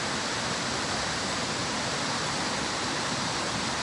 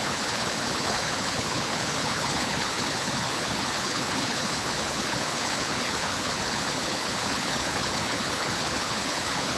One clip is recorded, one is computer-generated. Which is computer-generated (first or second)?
second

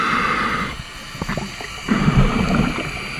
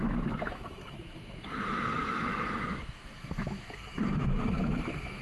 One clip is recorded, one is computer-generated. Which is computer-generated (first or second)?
second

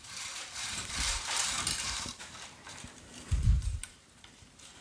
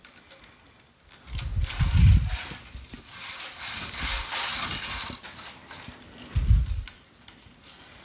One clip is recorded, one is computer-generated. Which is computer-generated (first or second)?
first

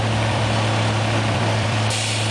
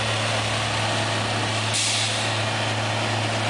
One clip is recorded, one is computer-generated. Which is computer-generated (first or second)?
first